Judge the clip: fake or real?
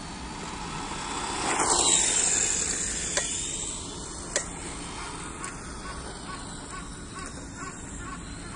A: real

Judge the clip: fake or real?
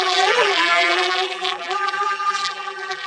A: fake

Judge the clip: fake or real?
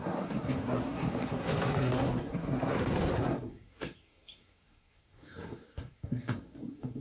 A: fake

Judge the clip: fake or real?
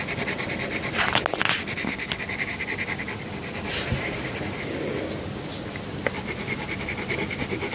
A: real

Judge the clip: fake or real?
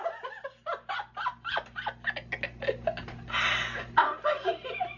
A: real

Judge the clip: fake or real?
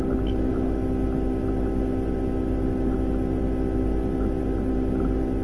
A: real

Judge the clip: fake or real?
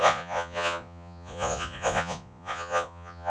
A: fake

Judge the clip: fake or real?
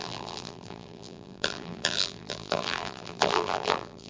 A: fake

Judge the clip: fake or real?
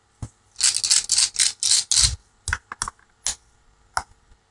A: real